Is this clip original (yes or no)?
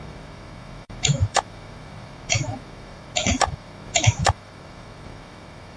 no